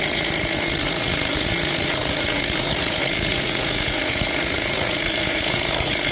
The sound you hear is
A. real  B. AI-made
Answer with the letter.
B